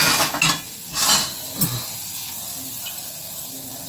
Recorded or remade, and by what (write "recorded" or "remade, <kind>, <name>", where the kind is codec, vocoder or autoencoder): recorded